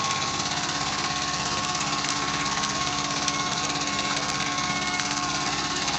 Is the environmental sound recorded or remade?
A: remade